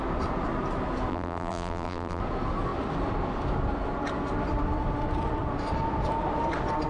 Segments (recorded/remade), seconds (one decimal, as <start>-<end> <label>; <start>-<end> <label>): 0.0-1.1 recorded; 1.1-2.2 remade; 2.2-6.9 recorded